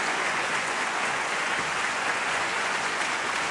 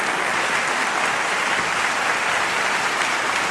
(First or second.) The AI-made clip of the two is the first